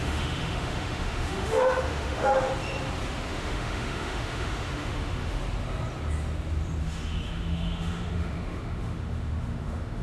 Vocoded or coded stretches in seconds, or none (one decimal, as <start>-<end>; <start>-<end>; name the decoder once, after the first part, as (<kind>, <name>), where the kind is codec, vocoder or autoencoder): 0.0-2.5 (autoencoder, DAC-VAE); 3.3-5.4; 6.8-10.0